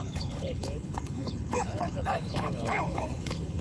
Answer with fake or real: fake